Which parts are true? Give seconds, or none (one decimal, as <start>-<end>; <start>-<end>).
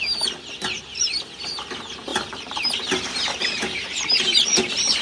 0.0-2.1